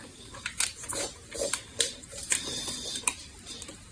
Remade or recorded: remade